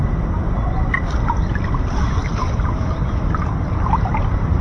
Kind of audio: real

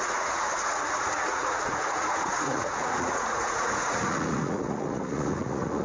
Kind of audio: fake